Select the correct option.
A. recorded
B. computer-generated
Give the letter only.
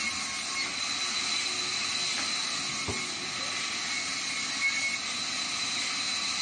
A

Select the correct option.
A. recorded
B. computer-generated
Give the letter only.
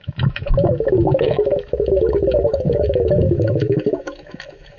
B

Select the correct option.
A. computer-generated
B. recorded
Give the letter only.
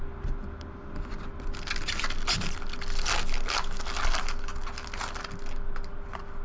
B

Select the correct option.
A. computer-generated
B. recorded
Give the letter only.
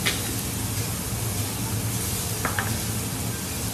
B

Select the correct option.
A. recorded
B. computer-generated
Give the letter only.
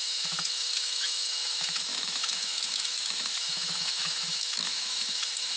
B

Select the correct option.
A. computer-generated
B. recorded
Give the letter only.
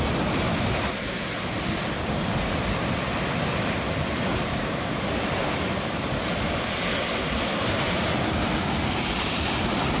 B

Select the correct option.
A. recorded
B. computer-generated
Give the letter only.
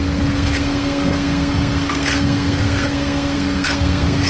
B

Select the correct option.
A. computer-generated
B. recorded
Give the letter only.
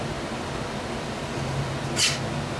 B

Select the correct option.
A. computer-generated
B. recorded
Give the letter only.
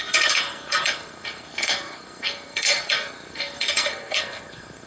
A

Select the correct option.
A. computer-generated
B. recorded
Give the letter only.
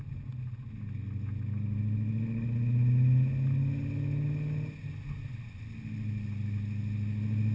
B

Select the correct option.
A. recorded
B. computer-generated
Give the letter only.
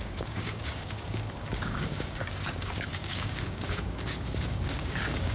B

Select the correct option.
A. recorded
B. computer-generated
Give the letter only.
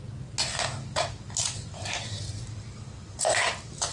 A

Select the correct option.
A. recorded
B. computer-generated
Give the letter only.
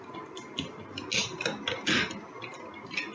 A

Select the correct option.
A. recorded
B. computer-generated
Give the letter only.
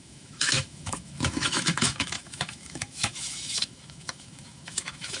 B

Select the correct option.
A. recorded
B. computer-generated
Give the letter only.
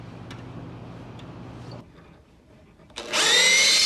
A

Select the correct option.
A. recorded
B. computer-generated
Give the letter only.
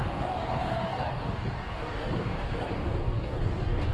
B